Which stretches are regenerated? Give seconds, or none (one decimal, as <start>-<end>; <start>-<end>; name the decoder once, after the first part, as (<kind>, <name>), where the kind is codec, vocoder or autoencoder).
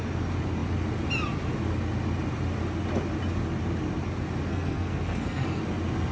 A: 4.5-5.6 (codec, SNAC)